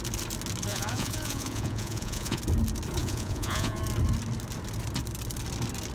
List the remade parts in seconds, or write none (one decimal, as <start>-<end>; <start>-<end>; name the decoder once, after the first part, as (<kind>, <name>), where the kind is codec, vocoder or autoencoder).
0.7-2.4 (vocoder, Vocos); 3.0-3.8